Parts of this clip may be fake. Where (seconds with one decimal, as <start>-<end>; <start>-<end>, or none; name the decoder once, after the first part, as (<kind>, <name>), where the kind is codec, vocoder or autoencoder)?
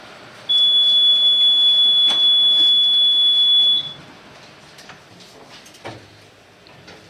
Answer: none